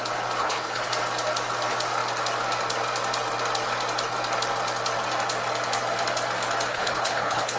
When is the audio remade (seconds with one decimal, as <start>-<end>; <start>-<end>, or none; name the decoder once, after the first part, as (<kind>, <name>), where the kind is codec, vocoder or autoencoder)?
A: 0.4-0.9 (codec, HILCodec); 6.7-7.6